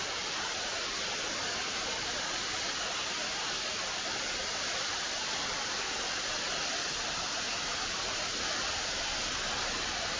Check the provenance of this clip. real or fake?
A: real